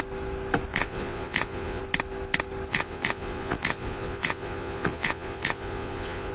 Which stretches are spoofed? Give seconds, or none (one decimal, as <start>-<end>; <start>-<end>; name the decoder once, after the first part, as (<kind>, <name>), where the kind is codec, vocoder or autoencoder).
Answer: 0.7-1.8 (vocoder, Vocos); 2.7-6.3